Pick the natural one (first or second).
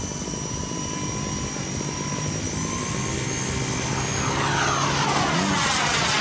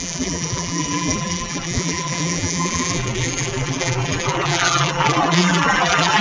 first